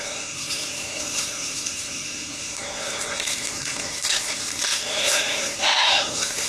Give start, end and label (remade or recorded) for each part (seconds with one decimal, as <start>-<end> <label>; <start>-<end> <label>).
0.0-6.5 remade